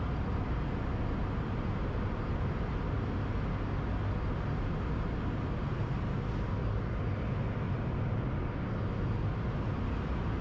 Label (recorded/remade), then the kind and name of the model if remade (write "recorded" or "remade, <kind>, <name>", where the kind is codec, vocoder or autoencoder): recorded